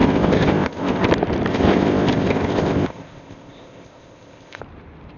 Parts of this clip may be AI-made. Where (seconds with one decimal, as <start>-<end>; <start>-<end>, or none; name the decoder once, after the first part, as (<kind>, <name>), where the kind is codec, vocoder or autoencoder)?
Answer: 0.0-1.1 (codec, ZipCodec); 1.5-4.6